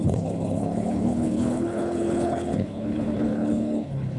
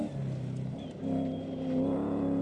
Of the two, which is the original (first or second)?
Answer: second